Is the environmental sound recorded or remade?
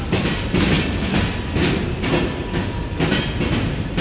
recorded